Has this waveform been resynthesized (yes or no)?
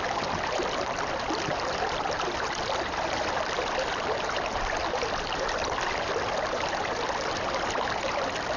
no